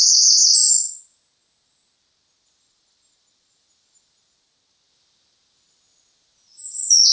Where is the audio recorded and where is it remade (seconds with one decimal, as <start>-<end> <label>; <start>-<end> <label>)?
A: 0.0-7.1 recorded